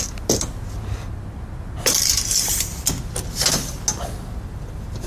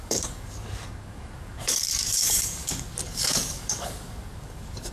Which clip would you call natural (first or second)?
first